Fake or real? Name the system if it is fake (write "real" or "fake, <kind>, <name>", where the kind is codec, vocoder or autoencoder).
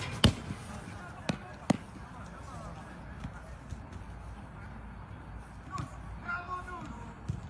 real